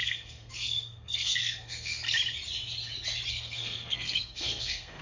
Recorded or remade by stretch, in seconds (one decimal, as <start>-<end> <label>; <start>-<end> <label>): 0.0-2.0 remade; 2.0-3.3 recorded; 3.3-5.0 remade